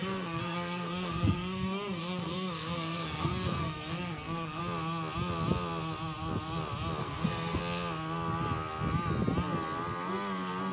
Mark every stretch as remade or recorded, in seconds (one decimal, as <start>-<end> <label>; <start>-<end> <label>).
0.0-4.6 remade; 4.6-7.0 recorded; 7.0-7.6 remade; 7.6-10.7 recorded